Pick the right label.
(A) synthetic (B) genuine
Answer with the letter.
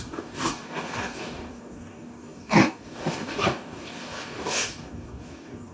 A